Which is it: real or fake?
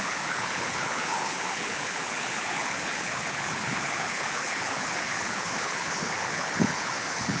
fake